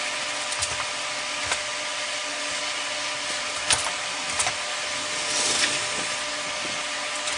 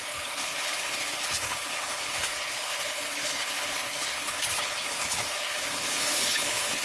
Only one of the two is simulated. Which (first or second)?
second